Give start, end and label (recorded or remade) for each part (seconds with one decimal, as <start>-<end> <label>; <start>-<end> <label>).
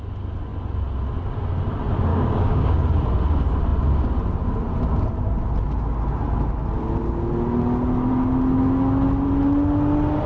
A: 0.0-2.1 recorded; 2.1-2.8 remade; 2.8-10.3 recorded